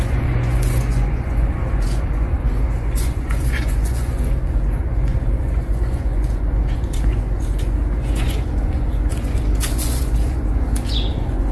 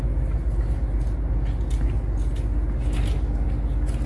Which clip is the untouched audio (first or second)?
second